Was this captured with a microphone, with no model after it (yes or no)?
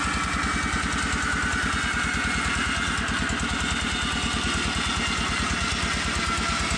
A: yes